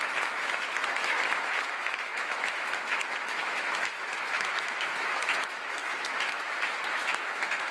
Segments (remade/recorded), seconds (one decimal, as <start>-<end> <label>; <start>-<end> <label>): 0.0-7.7 remade